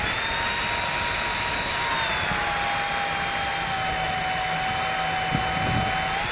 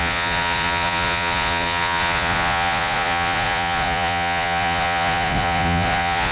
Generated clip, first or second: second